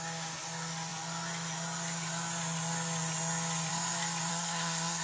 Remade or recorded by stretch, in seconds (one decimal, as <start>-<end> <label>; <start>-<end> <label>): 0.0-4.3 recorded; 4.3-5.0 remade